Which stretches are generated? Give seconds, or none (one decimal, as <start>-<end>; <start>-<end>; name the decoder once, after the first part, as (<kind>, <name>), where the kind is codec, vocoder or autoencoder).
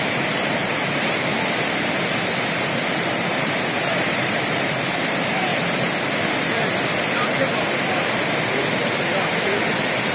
0.0-5.5 (vocoder, BigVGAN v2); 6.3-10.1